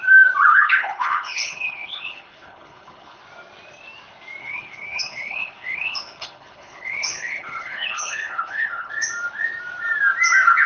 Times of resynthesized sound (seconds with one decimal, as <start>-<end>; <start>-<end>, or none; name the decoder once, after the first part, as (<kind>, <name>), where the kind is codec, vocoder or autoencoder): 0.5-3.2 (codec, HILCodec); 4.4-8.9